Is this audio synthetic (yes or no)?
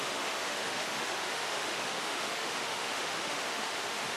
yes